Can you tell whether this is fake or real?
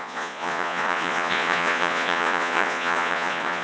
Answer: fake